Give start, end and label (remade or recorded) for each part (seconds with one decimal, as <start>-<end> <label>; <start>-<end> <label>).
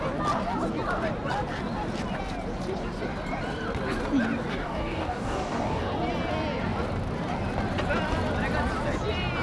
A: 0.0-4.5 recorded; 4.5-5.9 remade; 5.9-9.4 recorded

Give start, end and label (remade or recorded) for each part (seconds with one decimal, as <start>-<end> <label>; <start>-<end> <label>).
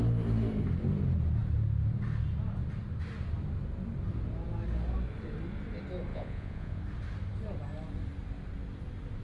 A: 0.0-6.1 recorded; 6.1-6.8 remade; 6.8-9.2 recorded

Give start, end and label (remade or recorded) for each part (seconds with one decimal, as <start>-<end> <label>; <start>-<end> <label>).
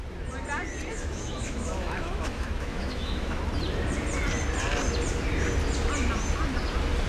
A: 0.0-0.9 recorded; 0.9-3.4 remade; 3.4-7.1 recorded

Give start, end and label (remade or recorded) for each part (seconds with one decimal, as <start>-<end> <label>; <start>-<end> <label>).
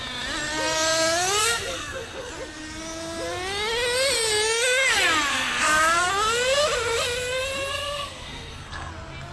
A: 0.0-1.4 recorded; 1.4-2.3 remade; 2.3-5.3 recorded; 5.3-6.1 remade; 6.1-7.7 recorded; 7.7-8.9 remade; 8.9-9.3 recorded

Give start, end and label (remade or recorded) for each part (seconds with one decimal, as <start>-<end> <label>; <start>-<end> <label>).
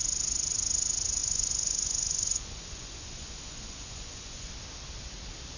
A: 0.0-1.2 recorded; 1.2-4.5 remade; 4.5-5.6 recorded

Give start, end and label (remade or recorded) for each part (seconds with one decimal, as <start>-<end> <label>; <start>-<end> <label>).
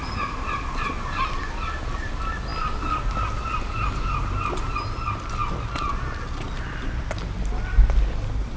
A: 0.0-8.6 recorded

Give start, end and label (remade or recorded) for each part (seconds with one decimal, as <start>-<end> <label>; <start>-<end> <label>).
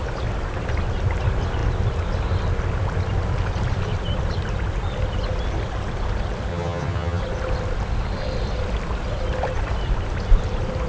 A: 0.0-6.5 recorded; 6.5-7.2 remade; 7.2-10.9 recorded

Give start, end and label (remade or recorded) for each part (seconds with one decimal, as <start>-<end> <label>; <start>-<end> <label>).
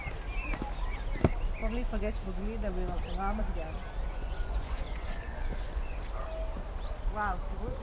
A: 0.0-4.1 recorded; 4.1-6.0 remade; 6.0-7.8 recorded